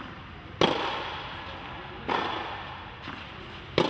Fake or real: real